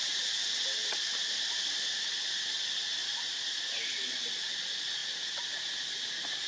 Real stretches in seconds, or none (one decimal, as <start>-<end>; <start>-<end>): 0.0-0.8; 1.8-3.0; 4.5-5.0; 5.6-6.5